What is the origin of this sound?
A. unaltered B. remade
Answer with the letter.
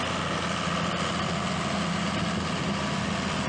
A